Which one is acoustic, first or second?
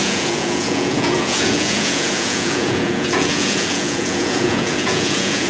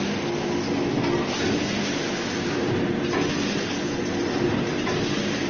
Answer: second